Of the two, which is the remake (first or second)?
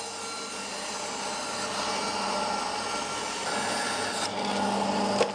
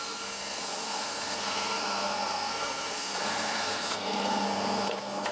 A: second